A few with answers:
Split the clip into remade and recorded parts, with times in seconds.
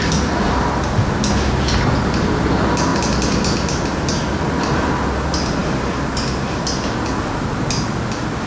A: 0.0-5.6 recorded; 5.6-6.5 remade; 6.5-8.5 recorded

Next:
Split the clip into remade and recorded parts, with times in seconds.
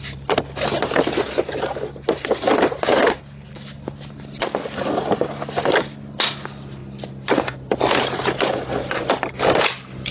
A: 0.0-10.1 recorded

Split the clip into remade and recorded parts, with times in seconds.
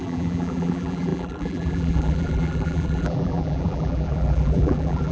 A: 0.0-5.1 remade